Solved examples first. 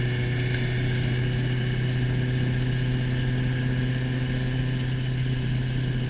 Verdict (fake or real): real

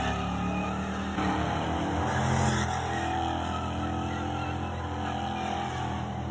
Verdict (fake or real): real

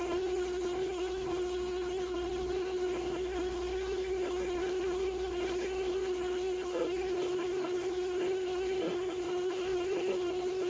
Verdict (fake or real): fake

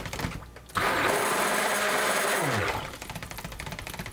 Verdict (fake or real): real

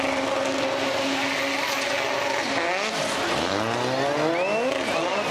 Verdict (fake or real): real